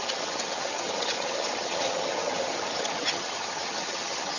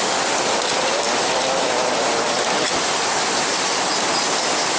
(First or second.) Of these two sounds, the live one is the second